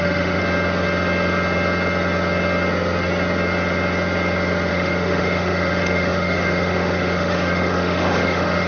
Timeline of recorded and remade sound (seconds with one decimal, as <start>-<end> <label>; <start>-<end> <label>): 0.0-0.4 remade; 0.4-4.7 recorded; 4.7-8.7 remade